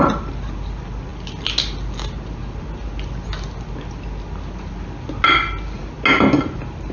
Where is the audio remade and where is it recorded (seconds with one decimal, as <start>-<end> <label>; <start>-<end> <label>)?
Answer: 0.0-6.9 recorded